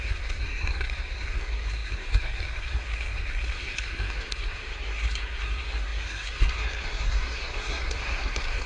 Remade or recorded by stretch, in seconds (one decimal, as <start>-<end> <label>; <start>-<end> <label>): 0.0-8.7 remade